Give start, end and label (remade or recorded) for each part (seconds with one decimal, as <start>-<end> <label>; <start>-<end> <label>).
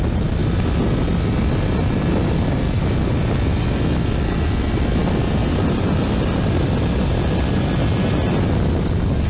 0.0-9.3 recorded